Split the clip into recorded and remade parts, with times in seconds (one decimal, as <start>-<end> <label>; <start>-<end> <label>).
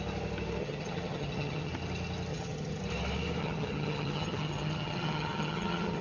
0.0-0.6 recorded; 0.6-1.7 remade; 1.7-2.3 recorded; 2.3-2.8 remade; 2.8-3.4 recorded; 3.4-6.0 remade